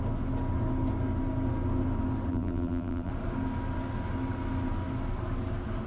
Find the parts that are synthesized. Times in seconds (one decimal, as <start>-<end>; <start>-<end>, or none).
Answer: 2.3-3.1